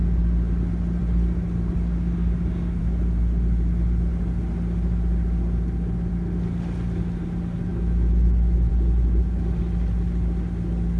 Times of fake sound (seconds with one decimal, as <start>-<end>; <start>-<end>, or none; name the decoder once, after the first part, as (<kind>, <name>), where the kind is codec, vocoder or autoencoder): 7.7-8.7 (autoencoder, DAC-VAE)